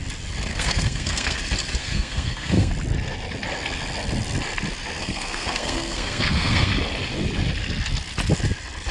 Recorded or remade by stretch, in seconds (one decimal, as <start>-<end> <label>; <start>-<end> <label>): 0.0-0.5 recorded; 0.5-1.4 remade; 1.4-1.8 recorded; 1.8-2.7 remade; 2.7-5.0 recorded; 5.0-6.7 remade; 6.7-8.9 recorded